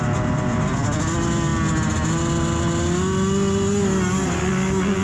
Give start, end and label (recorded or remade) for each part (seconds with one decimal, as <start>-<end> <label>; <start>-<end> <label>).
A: 0.0-5.0 recorded